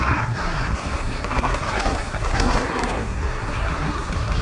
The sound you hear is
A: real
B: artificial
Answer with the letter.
B